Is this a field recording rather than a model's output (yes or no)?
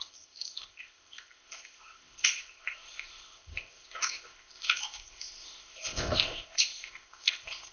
no